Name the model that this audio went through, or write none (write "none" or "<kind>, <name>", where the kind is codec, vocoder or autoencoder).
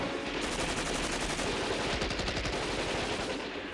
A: none